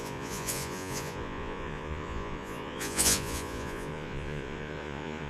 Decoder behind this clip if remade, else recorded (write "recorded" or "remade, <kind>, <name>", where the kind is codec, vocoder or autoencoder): remade, vocoder, Vocos